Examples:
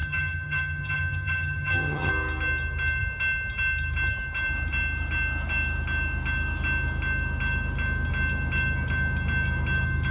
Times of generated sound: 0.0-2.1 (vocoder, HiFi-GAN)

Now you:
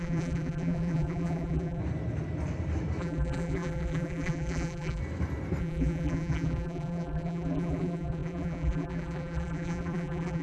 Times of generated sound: 0.0-1.8 (vocoder, BigVGAN v2); 3.0-5.0; 5.6-10.4

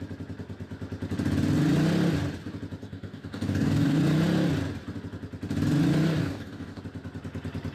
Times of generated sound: 2.8-4.0 (codec, DAC); 6.2-6.8

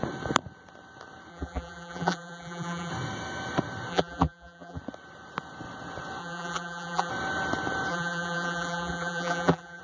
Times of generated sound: 1.3-2.9 (vocoder, BigVGAN v2); 3.9-4.8; 6.2-7.1; 7.9-9.8